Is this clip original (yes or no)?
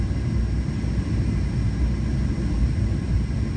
yes